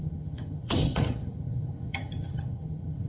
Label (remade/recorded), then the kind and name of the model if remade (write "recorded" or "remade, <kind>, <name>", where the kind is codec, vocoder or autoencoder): remade, vocoder, HiFi-GAN